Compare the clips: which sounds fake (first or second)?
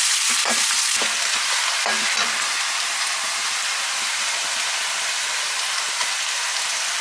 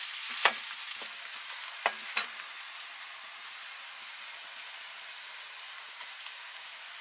first